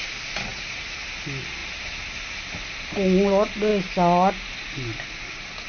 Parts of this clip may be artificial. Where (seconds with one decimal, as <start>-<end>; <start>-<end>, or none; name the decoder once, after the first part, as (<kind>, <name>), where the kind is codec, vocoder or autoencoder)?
0.5-1.2 (vocoder, BigVGAN v2); 1.6-2.2